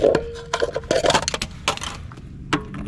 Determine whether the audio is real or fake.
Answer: real